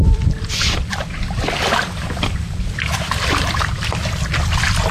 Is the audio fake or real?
fake